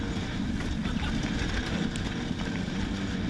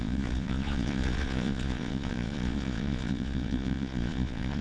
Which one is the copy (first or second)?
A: second